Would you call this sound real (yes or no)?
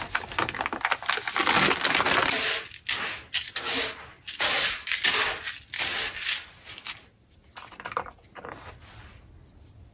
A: yes